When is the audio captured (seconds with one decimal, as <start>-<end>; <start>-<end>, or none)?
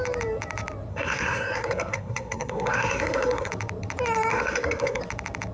0.0-0.9; 3.5-4.3; 5.0-5.5